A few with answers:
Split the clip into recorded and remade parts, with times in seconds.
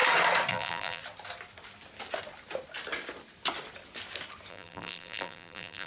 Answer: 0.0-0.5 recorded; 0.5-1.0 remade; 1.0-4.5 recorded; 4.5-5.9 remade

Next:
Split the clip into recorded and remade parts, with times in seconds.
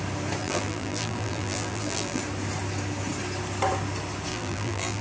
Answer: 0.0-0.4 recorded; 0.4-2.2 remade; 2.2-4.3 recorded; 4.3-5.0 remade